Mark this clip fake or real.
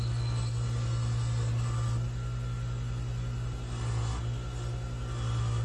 real